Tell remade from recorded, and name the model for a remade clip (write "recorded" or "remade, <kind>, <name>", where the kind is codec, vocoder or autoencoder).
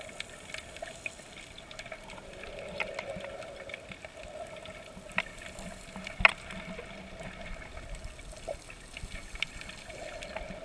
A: recorded